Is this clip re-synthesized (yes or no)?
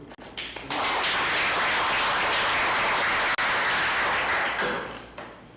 no